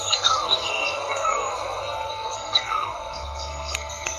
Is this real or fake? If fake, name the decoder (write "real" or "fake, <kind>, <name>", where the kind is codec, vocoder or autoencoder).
fake, codec, SNAC